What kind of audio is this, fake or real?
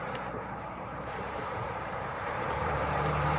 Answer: fake